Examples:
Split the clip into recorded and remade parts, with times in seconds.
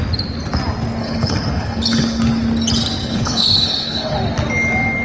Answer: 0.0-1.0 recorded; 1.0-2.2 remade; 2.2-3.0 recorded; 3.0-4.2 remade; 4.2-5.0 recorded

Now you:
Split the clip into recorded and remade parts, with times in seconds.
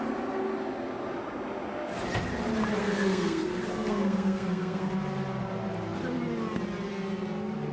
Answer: 0.0-2.8 recorded; 2.8-4.9 remade; 4.9-7.7 recorded